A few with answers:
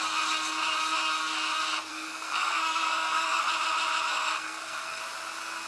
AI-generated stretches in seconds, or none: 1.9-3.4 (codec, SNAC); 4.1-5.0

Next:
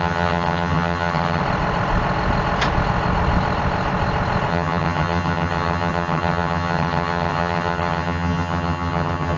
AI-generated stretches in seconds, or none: 0.0-1.4 (vocoder, HiFi-GAN); 4.5-9.4

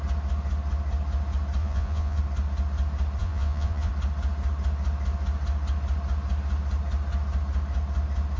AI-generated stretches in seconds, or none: 1.6-2.2 (vocoder, Vocos); 3.2-3.9

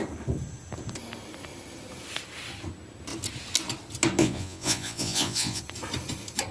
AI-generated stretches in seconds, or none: 4.2-5.6 (vocoder, Vocos)